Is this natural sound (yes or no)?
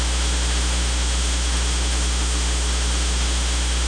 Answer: no